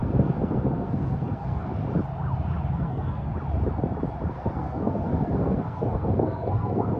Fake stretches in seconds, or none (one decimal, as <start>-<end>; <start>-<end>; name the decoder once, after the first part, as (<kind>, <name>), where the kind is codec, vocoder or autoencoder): 0.0-1.8 (codec, SNAC); 2.7-3.3; 4.3-7.0